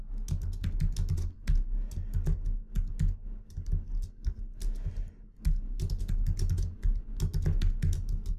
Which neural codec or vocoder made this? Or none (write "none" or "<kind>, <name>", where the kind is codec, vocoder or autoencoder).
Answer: none